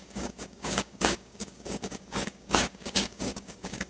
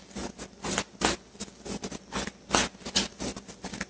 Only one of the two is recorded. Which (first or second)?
second